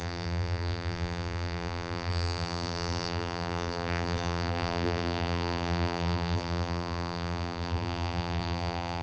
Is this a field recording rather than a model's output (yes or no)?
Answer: no